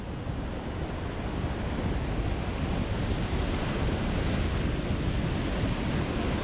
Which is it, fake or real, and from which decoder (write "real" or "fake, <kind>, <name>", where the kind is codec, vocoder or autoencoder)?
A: real